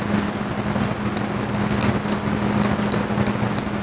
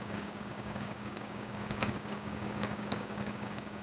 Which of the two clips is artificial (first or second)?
second